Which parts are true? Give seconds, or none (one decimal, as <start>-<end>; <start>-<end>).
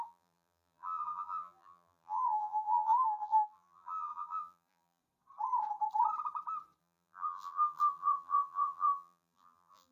5.0-6.8